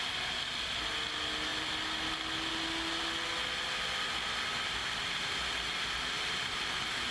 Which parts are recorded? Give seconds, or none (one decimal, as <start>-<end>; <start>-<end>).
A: 0.0-7.1